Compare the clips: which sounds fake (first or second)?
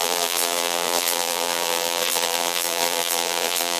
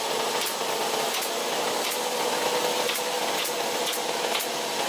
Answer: first